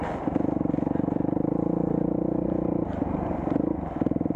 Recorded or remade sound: remade